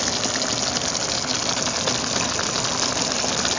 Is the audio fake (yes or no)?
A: no